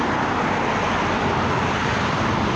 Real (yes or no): yes